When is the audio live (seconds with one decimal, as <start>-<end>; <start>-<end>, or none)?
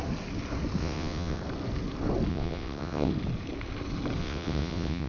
0.0-0.8; 1.4-2.3; 3.1-4.2